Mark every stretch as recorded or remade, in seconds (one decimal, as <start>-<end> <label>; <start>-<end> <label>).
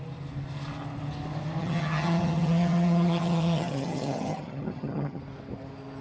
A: 0.0-1.6 recorded; 1.6-5.2 remade; 5.2-6.0 recorded